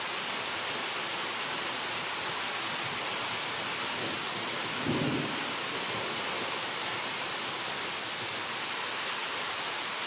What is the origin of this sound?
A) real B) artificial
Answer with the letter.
A